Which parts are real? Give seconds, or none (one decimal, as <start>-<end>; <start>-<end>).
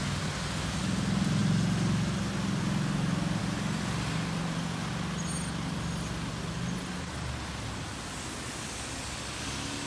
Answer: 0.0-9.9